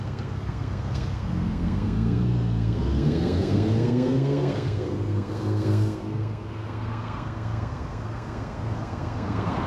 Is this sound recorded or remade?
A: remade